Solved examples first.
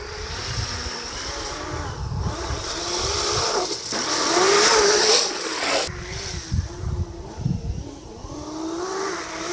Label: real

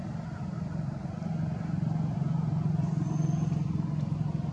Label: real